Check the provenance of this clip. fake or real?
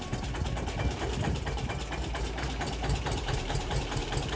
fake